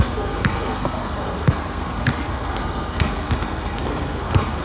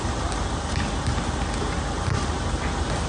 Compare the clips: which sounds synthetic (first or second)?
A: first